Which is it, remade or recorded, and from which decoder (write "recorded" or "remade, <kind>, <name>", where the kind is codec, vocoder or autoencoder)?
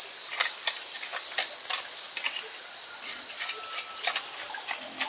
recorded